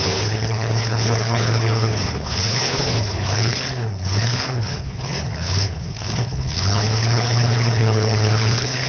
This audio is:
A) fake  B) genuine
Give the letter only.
A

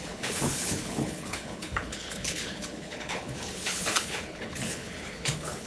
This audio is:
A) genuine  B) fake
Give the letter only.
B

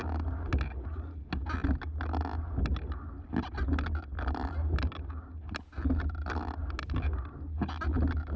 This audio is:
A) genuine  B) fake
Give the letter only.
A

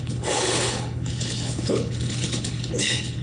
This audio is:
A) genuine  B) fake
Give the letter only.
B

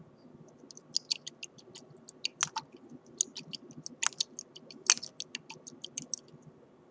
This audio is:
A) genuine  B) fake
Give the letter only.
A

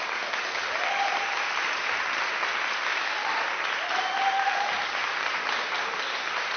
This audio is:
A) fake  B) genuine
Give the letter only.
B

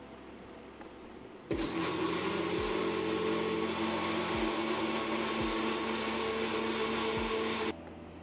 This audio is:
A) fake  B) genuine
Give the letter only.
B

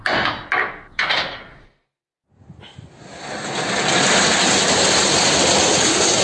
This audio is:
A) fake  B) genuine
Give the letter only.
B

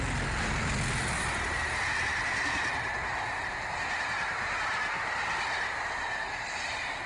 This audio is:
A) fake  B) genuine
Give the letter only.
B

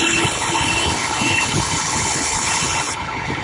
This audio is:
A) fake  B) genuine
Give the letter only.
A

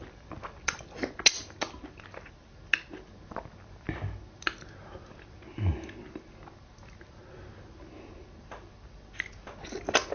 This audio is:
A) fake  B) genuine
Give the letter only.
B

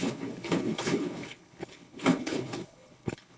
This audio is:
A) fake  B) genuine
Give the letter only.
A